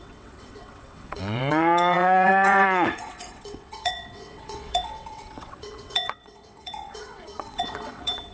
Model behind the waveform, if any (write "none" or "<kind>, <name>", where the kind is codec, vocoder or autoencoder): vocoder, WaveNeXt